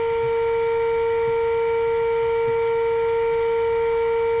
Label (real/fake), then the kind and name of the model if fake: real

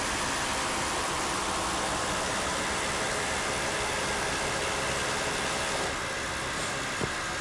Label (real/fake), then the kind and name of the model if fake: real